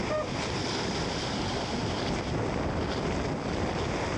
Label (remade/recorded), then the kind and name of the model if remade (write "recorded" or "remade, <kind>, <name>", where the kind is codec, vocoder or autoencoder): recorded